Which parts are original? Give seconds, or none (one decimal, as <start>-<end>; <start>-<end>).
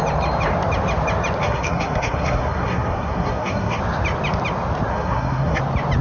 0.0-1.4; 3.8-4.9; 5.6-6.0